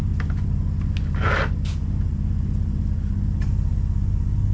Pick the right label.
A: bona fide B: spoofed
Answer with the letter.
A